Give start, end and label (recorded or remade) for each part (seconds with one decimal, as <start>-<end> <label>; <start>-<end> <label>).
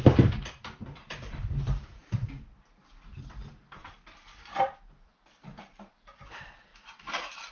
0.0-2.0 remade; 2.0-2.9 recorded; 2.9-7.5 remade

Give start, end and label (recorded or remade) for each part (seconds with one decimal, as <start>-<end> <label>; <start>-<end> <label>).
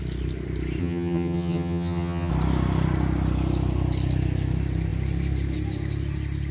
0.0-0.8 recorded; 0.8-2.3 remade; 2.3-6.5 recorded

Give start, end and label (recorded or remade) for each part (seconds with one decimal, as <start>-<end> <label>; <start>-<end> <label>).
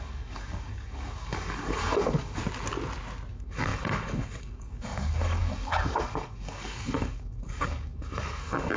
0.0-2.4 remade; 2.4-3.3 recorded; 3.3-8.8 remade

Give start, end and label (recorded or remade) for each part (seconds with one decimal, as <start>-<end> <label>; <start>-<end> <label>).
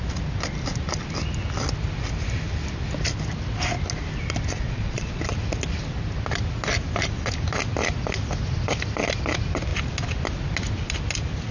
0.0-4.5 recorded; 4.5-5.2 remade; 5.2-11.5 recorded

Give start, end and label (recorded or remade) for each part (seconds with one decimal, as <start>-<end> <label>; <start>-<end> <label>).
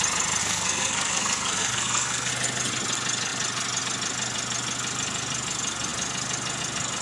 0.0-0.4 recorded; 0.4-2.3 remade; 2.3-7.0 recorded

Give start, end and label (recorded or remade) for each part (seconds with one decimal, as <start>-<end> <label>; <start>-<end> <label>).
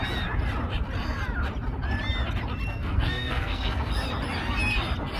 0.0-2.7 recorded; 2.7-3.9 remade; 3.9-5.2 recorded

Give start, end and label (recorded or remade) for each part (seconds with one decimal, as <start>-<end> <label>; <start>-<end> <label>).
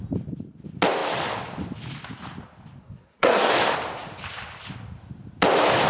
0.0-2.8 recorded; 2.8-3.5 remade; 3.5-5.9 recorded